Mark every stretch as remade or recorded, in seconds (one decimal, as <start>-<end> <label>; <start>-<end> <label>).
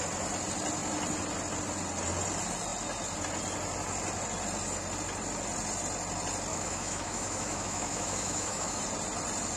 0.0-6.5 recorded; 6.5-8.8 remade; 8.8-9.6 recorded